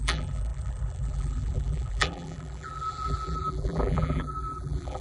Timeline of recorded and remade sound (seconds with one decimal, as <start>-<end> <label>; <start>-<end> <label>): 0.0-5.0 remade